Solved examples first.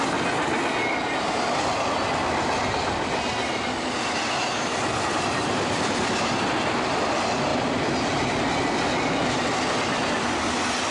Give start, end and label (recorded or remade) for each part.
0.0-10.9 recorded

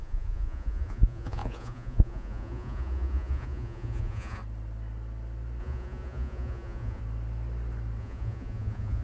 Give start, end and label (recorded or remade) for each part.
0.0-4.4 remade; 4.4-5.6 recorded; 5.6-7.0 remade; 7.0-8.0 recorded; 8.0-9.0 remade